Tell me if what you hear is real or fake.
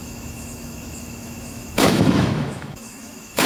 fake